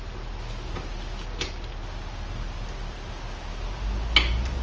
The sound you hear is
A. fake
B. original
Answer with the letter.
B